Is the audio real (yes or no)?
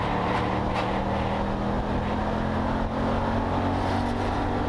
yes